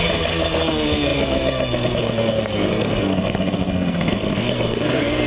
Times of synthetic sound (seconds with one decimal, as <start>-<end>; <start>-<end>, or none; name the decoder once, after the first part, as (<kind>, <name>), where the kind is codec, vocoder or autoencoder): 0.0-5.3 (codec, SNAC)